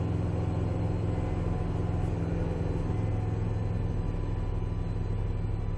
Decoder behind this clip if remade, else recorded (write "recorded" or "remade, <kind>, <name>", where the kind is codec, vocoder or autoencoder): recorded